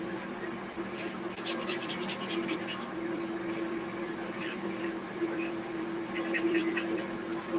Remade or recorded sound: remade